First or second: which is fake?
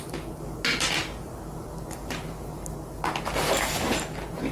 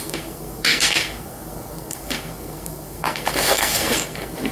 second